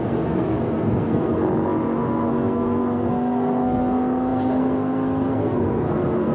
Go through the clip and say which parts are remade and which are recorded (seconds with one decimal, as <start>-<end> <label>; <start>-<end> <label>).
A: 0.0-6.3 remade